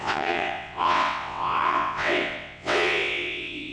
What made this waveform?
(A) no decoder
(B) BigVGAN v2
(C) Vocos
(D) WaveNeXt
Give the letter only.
D